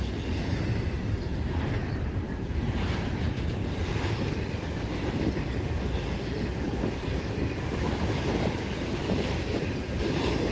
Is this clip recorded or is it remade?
remade